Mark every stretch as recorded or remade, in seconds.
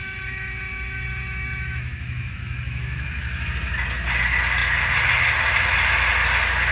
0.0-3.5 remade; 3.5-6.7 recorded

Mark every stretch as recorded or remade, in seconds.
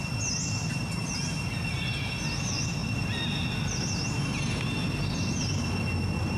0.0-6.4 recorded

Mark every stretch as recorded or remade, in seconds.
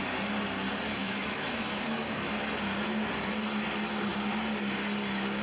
0.0-1.0 recorded; 1.0-2.3 remade; 2.3-5.4 recorded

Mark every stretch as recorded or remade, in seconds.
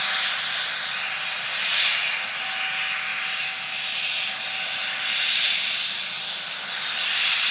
0.0-7.5 recorded